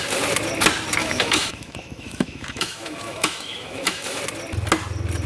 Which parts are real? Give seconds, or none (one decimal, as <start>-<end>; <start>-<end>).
0.0-1.0; 4.2-5.3